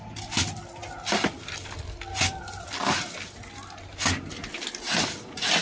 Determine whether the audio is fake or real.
real